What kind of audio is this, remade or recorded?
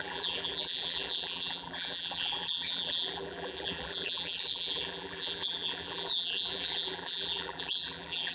remade